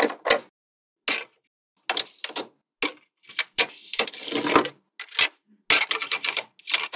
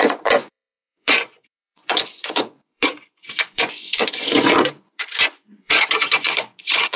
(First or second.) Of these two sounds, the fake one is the second